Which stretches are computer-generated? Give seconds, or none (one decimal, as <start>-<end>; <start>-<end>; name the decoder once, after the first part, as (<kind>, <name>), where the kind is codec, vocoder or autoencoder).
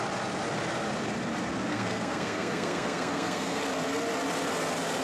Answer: 1.7-3.6 (codec, SNAC)